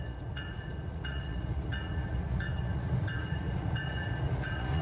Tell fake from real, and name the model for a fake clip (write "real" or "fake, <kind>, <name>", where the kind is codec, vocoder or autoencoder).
fake, vocoder, Vocos